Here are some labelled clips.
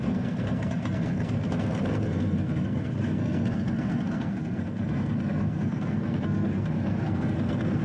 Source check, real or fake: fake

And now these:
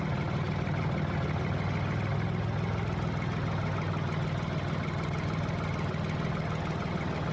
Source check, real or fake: real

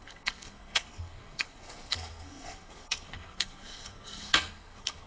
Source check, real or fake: fake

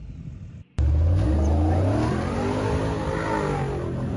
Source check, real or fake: real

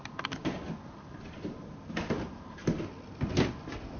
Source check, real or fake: real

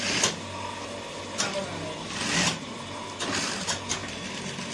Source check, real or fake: real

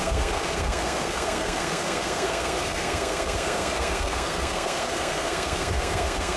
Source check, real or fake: fake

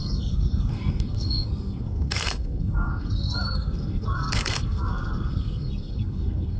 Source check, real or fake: fake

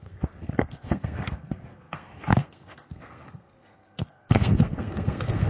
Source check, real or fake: fake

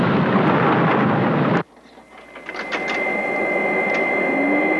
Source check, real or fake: real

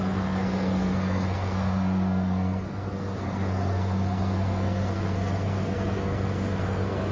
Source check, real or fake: fake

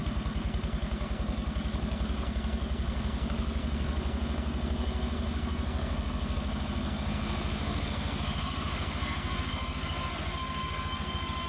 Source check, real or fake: fake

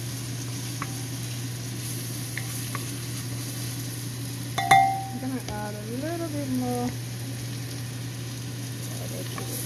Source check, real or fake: real